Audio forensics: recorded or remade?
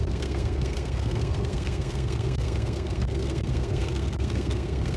remade